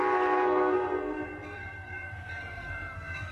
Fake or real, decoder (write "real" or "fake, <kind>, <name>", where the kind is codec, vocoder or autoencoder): fake, codec, SNAC